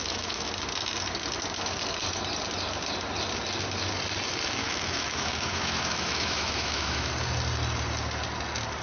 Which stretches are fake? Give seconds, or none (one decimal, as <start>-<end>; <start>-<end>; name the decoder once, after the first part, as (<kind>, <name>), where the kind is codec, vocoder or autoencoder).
0.0-0.5 (autoencoder, DAC-VAE); 4.6-7.1